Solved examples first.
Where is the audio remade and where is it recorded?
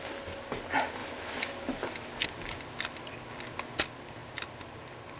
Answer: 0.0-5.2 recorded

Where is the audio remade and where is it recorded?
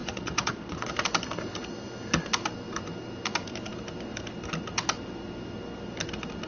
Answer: 0.0-0.9 remade; 0.9-6.5 recorded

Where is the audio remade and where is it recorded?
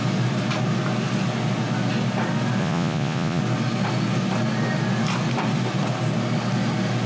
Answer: 0.0-2.6 recorded; 2.6-3.4 remade; 3.4-7.1 recorded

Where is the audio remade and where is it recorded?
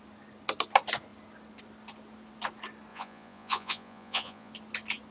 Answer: 0.0-2.9 recorded; 2.9-4.5 remade; 4.5-5.1 recorded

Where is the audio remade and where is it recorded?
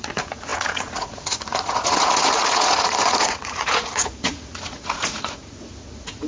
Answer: 0.0-6.3 remade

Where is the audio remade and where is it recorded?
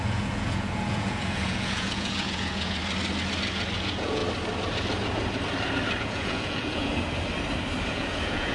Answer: 0.0-2.8 remade; 2.8-3.5 recorded; 3.5-4.2 remade; 4.2-6.0 recorded; 6.0-6.9 remade; 6.9-7.9 recorded; 7.9-8.5 remade